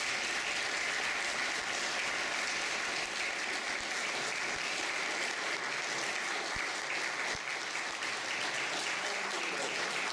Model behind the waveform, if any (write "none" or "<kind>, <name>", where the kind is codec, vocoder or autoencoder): none